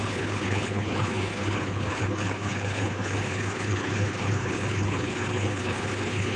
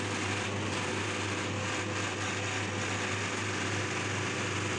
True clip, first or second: second